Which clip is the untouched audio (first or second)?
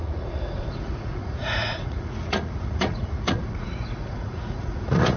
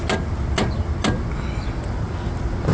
second